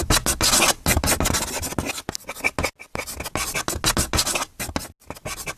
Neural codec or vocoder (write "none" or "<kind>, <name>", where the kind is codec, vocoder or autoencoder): none